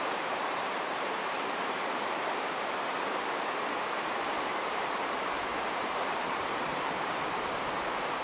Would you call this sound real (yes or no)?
no